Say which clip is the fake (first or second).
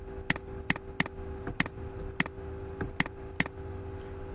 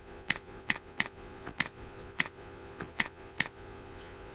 second